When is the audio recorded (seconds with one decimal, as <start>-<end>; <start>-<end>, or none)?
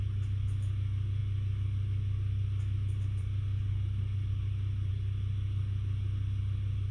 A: 0.0-6.9